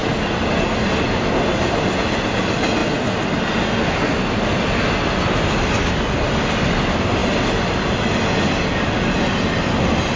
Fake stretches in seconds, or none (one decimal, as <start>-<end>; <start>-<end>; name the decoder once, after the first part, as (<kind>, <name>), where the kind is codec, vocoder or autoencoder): none